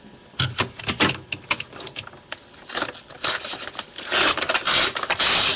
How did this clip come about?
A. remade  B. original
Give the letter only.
B